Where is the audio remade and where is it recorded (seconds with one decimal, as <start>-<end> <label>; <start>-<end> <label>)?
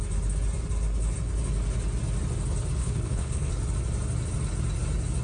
0.0-2.8 recorded; 2.8-3.5 remade; 3.5-5.2 recorded